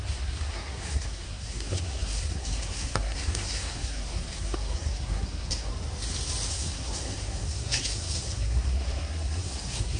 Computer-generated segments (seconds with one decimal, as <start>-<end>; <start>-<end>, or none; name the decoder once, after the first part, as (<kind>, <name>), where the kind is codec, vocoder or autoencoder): 0.0-5.7 (codec, SNAC); 6.5-10.0